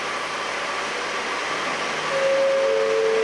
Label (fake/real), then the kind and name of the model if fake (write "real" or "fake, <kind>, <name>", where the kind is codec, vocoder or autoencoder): real